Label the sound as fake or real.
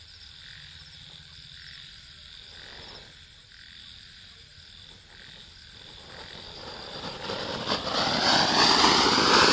real